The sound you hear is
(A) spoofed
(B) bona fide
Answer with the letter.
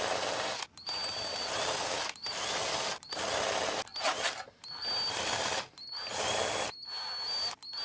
B